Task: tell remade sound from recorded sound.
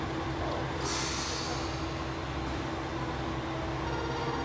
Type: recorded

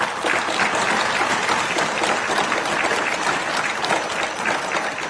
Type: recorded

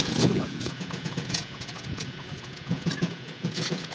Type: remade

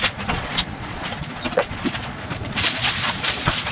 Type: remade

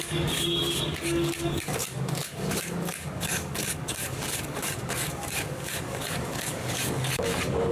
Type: remade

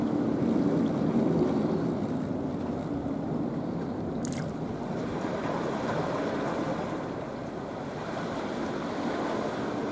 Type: recorded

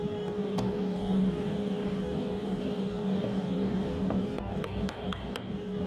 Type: remade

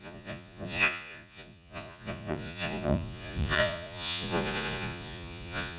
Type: remade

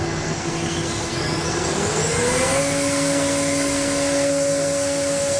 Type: remade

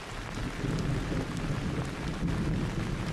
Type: recorded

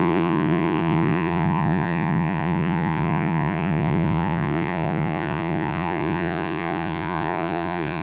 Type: remade